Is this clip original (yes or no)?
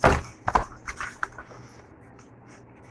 no